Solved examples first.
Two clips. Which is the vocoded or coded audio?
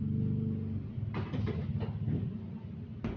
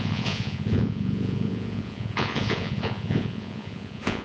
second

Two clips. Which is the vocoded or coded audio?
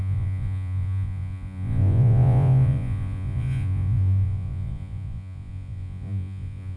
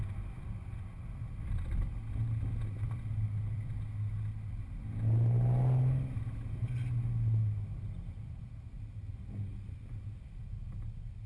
first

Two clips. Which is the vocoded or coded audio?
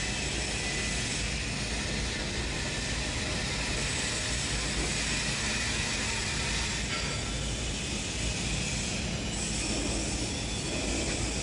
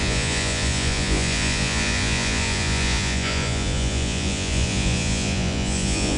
second